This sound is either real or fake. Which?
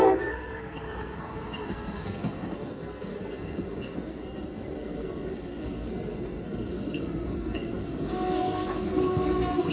fake